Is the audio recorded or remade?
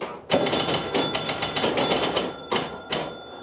recorded